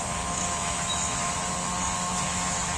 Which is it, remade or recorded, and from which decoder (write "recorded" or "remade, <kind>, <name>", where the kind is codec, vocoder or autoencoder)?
remade, autoencoder, DAC-VAE